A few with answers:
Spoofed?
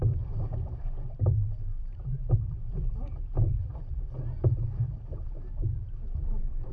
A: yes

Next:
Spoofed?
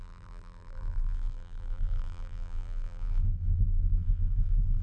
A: yes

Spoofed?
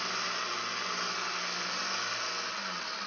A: no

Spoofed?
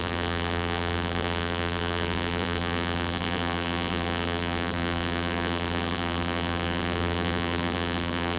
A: yes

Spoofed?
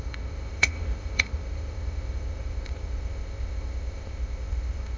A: yes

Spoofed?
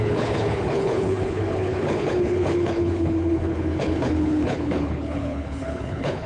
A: yes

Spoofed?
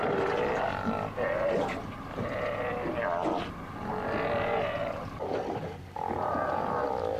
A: no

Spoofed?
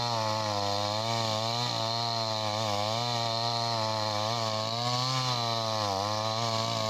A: no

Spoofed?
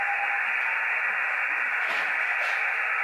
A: no